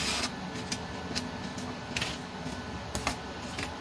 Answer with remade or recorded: recorded